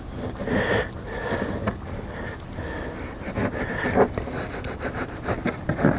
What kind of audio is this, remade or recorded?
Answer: recorded